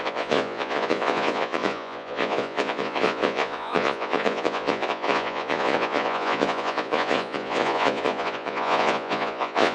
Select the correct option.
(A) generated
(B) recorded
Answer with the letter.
A